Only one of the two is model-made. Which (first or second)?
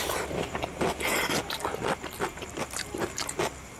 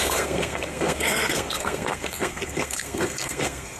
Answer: second